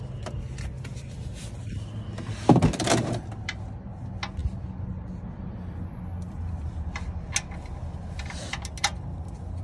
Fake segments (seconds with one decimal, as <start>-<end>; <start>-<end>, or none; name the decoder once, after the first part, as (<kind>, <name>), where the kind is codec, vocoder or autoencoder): none